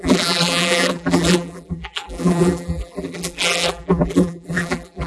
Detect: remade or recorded remade